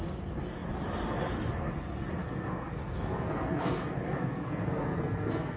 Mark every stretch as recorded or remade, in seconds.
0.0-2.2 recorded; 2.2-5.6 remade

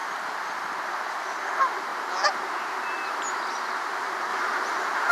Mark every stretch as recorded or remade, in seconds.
0.0-4.3 recorded; 4.3-5.1 remade

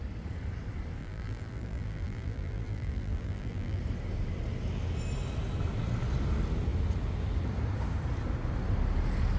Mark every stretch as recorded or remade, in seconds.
0.0-1.0 recorded; 1.0-3.8 remade; 3.8-9.4 recorded

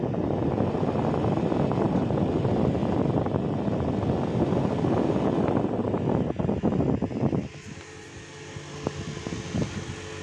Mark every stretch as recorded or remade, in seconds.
0.0-10.2 recorded

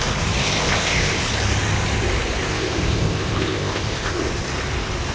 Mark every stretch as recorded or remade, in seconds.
0.0-0.4 recorded; 0.4-1.2 remade; 1.2-2.5 recorded; 2.5-4.2 remade; 4.2-5.1 recorded

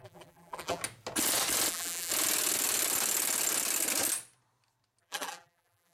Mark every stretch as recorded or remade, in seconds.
0.0-0.8 remade; 0.8-1.7 recorded; 1.7-2.1 remade; 2.1-5.0 recorded; 5.0-5.9 remade

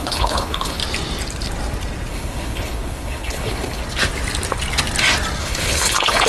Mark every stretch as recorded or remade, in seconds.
0.0-0.8 remade; 0.8-2.1 recorded; 2.1-3.8 remade; 3.8-5.4 recorded; 5.4-6.3 remade